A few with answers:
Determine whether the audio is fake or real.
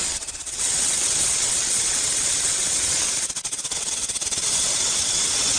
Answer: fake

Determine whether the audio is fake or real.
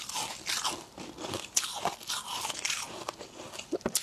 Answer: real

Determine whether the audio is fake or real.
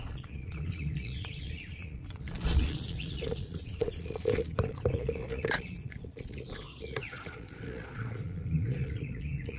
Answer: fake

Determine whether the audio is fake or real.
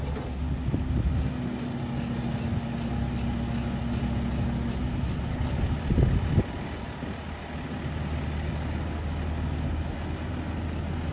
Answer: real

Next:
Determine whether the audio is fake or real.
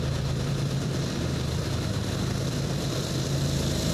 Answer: fake